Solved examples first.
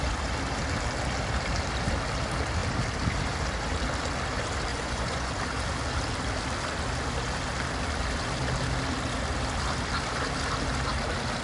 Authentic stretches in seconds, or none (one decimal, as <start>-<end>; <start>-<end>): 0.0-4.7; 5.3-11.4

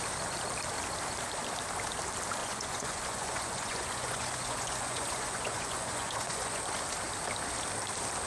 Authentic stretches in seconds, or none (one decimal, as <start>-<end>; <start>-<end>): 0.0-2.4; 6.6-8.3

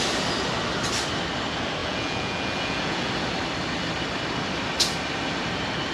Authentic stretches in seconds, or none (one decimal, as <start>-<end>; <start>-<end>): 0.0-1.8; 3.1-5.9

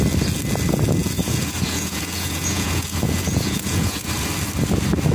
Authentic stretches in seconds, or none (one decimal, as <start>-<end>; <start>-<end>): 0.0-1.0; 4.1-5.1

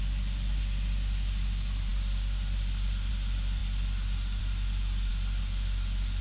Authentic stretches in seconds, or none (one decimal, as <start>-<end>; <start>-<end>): 0.0-6.2

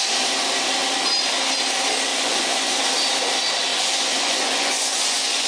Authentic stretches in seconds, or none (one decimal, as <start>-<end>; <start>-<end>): 0.0-2.1; 2.8-3.7

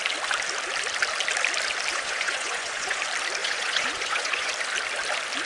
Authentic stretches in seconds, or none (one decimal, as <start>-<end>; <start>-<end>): 0.0-1.9; 3.0-3.4; 4.5-5.5

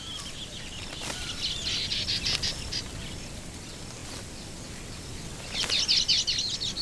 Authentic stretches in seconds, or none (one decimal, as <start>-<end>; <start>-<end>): 0.0-6.8